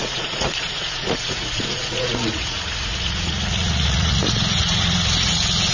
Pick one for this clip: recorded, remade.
remade